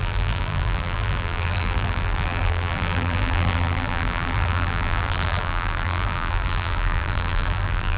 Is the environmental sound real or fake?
fake